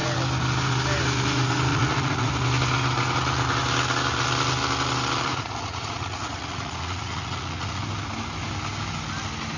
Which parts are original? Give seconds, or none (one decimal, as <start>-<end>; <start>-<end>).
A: 0.0-1.7; 2.3-5.3; 7.8-9.6